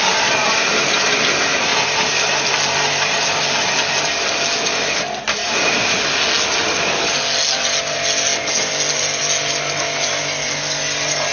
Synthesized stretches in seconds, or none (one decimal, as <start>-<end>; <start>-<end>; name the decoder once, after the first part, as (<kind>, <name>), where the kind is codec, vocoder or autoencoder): none